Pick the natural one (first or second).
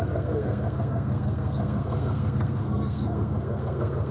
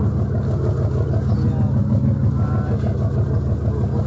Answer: second